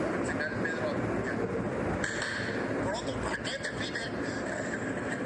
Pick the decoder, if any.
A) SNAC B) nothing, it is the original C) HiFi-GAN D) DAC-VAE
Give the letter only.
B